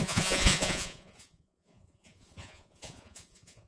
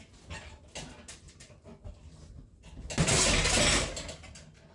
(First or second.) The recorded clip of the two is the second